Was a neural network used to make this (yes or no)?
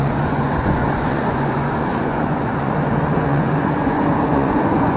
yes